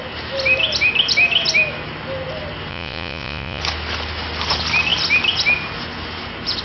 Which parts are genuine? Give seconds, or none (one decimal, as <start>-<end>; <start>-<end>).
0.0-2.7; 3.6-6.6